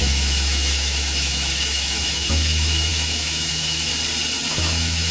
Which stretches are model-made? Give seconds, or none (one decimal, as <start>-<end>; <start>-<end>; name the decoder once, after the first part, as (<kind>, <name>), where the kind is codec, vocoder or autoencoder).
0.0-3.9 (autoencoder, DAC-VAE); 4.5-5.1